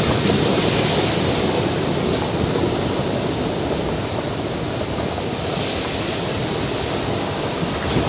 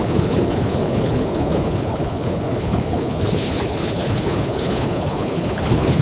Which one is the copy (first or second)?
second